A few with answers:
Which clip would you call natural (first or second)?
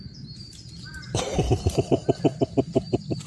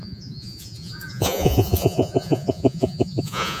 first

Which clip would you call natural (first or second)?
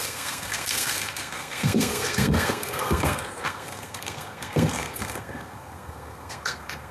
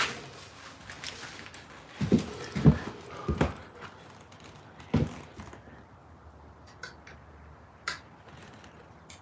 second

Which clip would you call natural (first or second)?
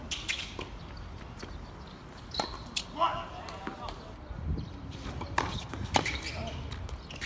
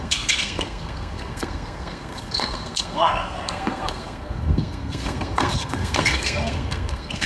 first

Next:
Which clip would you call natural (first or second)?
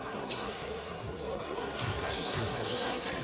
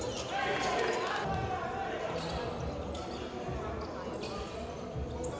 second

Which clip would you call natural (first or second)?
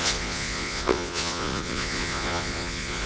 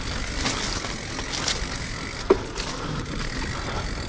second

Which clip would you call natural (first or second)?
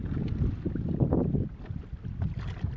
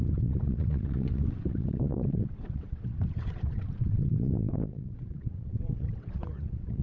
first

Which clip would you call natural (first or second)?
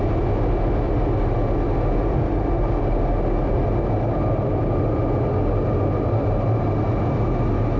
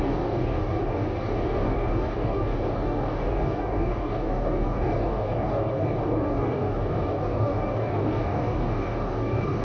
first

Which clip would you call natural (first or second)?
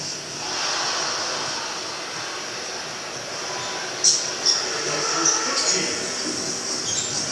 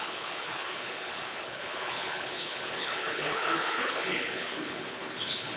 first